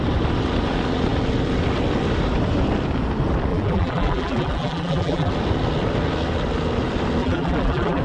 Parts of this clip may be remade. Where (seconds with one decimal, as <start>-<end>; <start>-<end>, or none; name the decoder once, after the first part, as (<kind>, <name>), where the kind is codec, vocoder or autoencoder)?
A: 3.5-5.3 (vocoder, BigVGAN v2); 7.2-8.0